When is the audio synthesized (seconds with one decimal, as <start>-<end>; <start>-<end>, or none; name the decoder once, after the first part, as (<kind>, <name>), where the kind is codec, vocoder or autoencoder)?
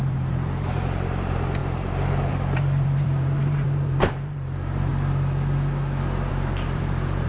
0.0-4.9 (vocoder, BigVGAN v2); 6.3-7.3